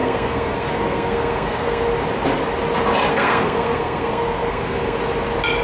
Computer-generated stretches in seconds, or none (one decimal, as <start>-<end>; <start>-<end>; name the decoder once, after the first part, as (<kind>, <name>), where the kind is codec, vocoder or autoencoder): 0.0-1.8 (codec, SNAC); 3.1-5.0